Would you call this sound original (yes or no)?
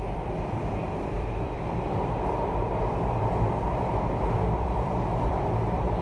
no